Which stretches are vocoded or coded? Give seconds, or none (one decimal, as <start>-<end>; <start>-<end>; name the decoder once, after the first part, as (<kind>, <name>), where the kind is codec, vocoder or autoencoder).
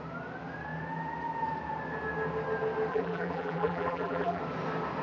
2.9-4.4 (vocoder, BigVGAN v2)